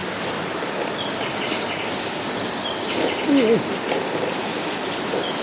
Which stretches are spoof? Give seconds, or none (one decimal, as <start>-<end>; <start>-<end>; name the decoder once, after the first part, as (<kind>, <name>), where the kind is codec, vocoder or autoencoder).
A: none